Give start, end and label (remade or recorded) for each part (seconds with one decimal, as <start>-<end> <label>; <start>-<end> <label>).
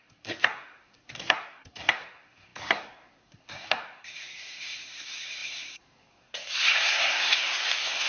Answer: 0.0-8.1 remade